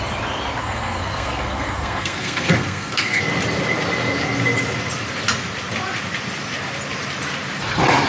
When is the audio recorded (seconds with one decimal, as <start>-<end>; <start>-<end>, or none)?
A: 0.0-0.6; 3.2-8.1